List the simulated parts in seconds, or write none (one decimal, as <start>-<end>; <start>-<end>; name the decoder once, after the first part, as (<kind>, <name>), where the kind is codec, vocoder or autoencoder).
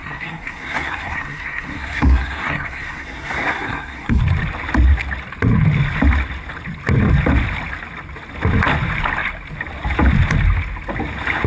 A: 0.0-4.2 (codec, SNAC)